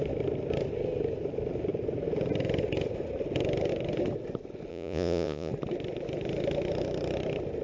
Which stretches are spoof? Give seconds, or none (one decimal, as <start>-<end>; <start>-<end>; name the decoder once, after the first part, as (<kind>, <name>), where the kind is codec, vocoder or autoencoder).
4.7-5.5 (vocoder, Vocos)